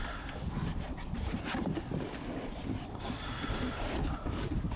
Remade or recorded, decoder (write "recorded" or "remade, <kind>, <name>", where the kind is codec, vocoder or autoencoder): remade, vocoder, BigVGAN v2